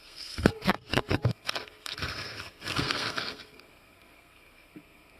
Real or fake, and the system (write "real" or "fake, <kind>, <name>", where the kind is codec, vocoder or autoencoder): fake, codec, SNAC